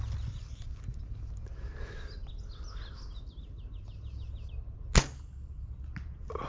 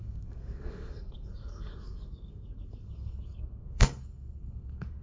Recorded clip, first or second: first